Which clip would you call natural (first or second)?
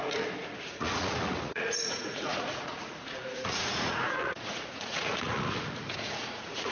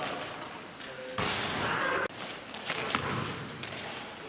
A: second